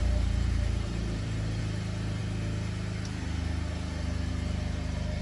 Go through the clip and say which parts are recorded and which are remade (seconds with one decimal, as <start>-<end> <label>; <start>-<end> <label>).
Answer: 0.0-1.6 remade; 1.6-5.2 recorded